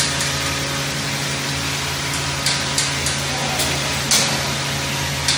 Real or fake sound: real